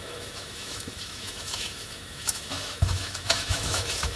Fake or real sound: fake